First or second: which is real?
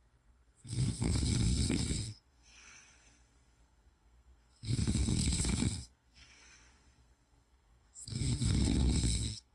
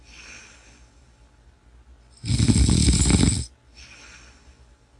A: second